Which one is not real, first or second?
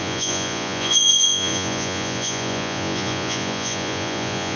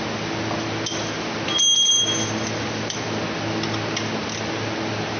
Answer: first